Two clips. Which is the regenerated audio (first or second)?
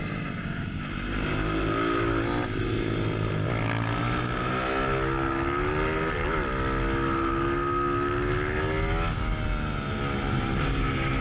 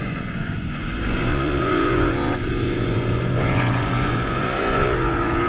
second